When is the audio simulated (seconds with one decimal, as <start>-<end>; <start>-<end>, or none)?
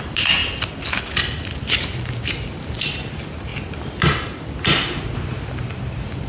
none